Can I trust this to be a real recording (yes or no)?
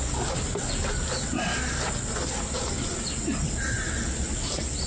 yes